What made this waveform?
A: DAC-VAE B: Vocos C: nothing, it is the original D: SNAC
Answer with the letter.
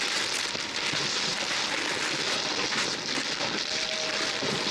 C